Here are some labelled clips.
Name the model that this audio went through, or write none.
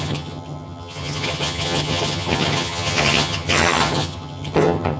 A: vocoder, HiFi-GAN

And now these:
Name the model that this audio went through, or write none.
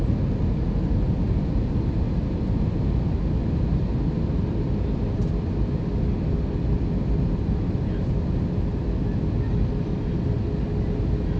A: none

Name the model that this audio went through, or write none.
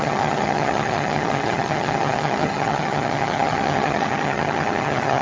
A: vocoder, HiFi-GAN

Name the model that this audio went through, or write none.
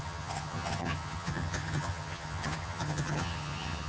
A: vocoder, HiFi-GAN